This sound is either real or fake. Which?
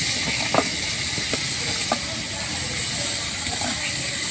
real